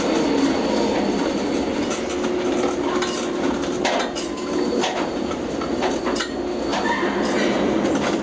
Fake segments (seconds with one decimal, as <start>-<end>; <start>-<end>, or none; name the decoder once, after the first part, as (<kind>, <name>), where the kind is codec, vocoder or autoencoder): none